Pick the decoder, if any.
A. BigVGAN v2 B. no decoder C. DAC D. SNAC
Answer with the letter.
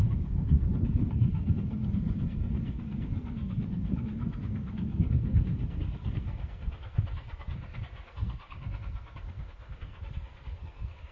D